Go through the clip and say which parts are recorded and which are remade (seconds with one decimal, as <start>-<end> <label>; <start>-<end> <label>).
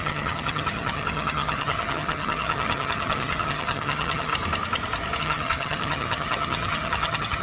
0.0-4.3 remade; 4.3-5.2 recorded; 5.2-7.4 remade